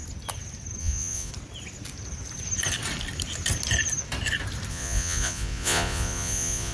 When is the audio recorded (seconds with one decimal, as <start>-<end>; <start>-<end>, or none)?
0.0-0.8; 1.3-4.7